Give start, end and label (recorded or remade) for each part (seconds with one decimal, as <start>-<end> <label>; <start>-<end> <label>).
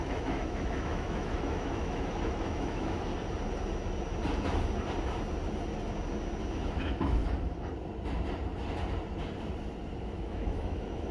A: 0.0-3.1 remade; 3.1-6.7 recorded; 6.7-7.2 remade; 7.2-10.0 recorded; 10.0-11.1 remade